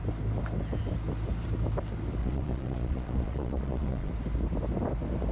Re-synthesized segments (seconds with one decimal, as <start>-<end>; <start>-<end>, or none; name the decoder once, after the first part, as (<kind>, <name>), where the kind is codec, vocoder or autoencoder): 2.2-4.1 (vocoder, Vocos)